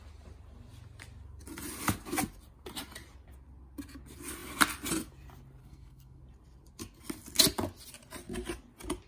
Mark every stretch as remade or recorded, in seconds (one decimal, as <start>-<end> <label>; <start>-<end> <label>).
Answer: 0.0-5.6 recorded; 5.6-6.2 remade; 6.2-9.1 recorded